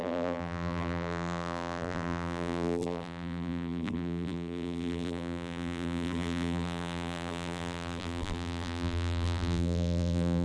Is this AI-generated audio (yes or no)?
yes